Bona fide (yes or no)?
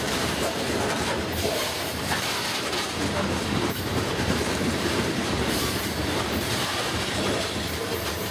no